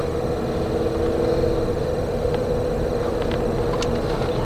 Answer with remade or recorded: recorded